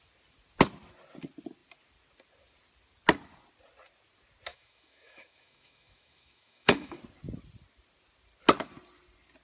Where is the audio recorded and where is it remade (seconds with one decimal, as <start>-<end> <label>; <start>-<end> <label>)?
0.0-4.5 recorded; 4.5-7.0 remade; 7.0-9.4 recorded